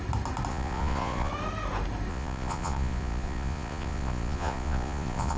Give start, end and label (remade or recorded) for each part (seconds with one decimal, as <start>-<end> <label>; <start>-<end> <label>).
0.0-0.5 recorded; 0.5-1.3 remade; 1.3-2.1 recorded; 2.1-5.4 remade